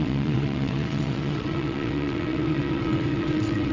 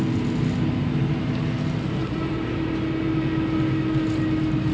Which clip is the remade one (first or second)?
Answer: first